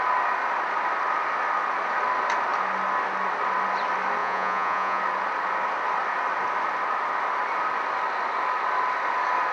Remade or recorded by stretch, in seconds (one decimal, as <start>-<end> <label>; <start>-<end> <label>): 0.0-4.2 recorded; 4.2-5.0 remade; 5.0-9.5 recorded